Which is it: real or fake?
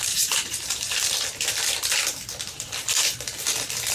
real